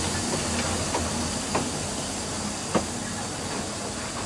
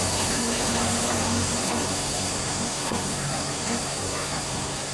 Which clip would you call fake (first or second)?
second